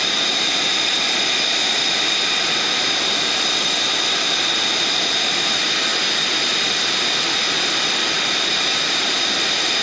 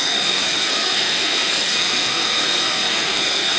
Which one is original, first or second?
first